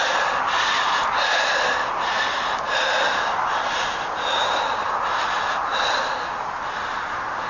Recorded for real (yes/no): yes